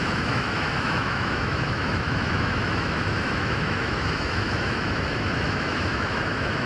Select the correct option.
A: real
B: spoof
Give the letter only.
B